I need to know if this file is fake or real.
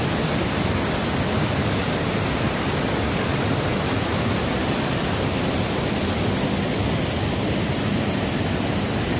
real